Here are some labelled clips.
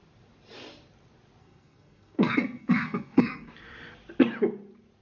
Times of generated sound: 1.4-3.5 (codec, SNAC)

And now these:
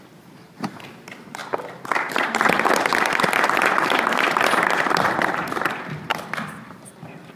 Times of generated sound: 0.0-1.4 (vocoder, BigVGAN v2); 2.1-2.9; 5.1-7.4

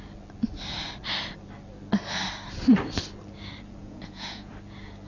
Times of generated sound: 3.8-4.5 (vocoder, Vocos)